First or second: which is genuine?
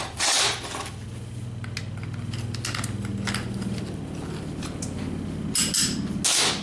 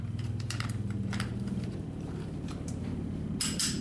first